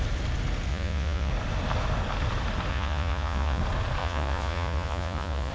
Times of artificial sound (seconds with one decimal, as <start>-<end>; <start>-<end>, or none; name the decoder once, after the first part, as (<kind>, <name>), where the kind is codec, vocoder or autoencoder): 0.7-1.3 (vocoder, Vocos); 2.7-3.6; 4.0-5.5